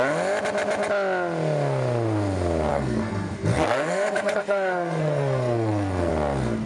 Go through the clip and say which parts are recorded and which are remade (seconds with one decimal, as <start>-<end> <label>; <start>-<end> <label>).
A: 0.0-2.7 recorded; 2.7-6.1 remade; 6.1-6.7 recorded